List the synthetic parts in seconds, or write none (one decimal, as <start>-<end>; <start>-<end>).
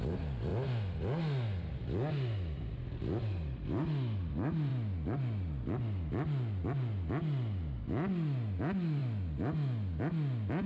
none